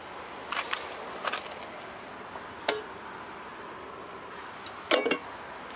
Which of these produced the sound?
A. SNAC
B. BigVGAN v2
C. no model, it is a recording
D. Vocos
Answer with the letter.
C